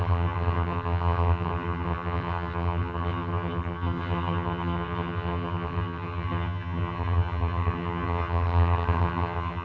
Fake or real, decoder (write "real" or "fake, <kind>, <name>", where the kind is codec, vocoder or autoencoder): fake, vocoder, HiFi-GAN